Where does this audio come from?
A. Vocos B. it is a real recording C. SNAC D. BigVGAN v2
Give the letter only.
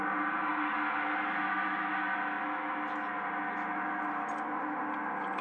B